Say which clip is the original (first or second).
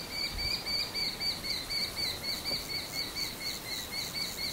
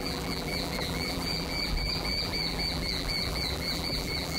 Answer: first